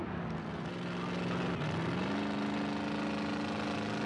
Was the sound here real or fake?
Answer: real